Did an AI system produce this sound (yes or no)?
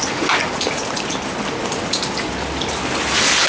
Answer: no